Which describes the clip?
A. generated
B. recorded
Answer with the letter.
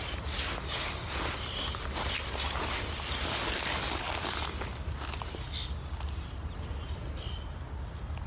B